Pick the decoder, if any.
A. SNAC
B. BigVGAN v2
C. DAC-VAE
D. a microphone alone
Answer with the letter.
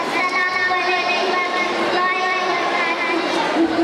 D